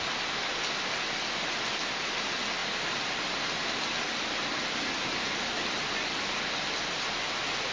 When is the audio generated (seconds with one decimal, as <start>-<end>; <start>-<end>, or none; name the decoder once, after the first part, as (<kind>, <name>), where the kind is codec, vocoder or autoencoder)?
2.6-7.2 (vocoder, BigVGAN v2)